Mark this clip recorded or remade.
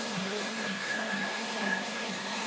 remade